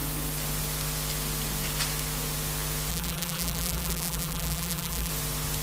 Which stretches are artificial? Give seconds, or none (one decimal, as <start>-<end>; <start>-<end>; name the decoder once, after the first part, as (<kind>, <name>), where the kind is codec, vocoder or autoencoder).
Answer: 2.9-5.1 (vocoder, BigVGAN v2)